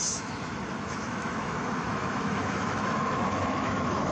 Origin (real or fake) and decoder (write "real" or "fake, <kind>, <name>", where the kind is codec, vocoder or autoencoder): fake, autoencoder, DAC-VAE